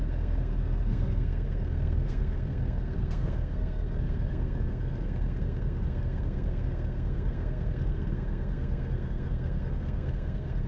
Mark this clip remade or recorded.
remade